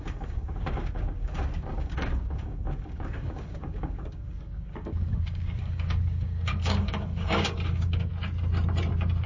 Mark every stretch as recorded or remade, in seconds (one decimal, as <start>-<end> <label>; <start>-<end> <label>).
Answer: 0.0-8.1 remade; 8.1-9.3 recorded